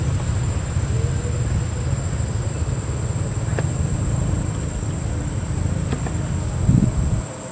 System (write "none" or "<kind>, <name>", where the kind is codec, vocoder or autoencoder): none